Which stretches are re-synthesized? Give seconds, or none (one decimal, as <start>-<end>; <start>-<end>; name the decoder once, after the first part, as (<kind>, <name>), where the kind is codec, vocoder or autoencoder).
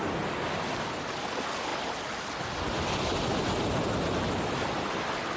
none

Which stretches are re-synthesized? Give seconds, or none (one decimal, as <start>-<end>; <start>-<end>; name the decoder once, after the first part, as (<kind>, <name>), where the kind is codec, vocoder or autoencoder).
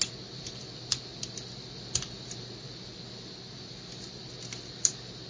none